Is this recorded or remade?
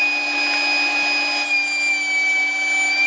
recorded